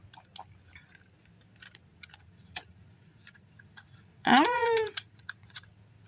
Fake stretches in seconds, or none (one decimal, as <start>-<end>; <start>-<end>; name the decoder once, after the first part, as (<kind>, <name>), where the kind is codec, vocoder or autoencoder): 1.9-5.6 (vocoder, Vocos)